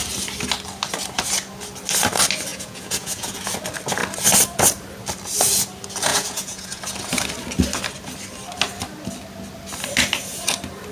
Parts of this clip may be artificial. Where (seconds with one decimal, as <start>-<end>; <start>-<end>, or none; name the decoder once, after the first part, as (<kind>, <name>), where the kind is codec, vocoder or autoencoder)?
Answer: 2.5-3.4 (vocoder, Vocos); 6.1-6.8